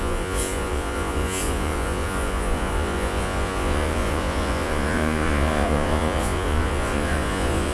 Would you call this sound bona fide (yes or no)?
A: no